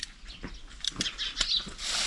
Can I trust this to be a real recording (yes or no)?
yes